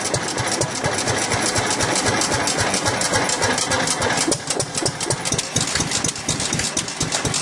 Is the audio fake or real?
real